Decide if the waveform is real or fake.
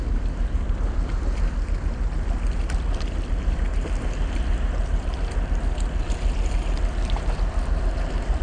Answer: real